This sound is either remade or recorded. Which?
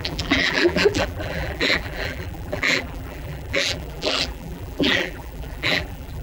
remade